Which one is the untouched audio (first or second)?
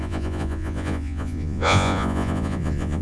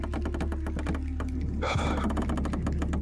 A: second